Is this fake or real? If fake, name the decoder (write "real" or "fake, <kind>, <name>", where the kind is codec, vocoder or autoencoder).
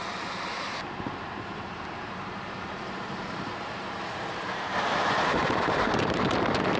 fake, vocoder, BigVGAN v2